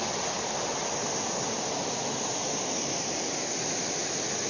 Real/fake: real